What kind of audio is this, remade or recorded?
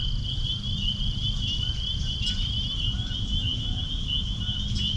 recorded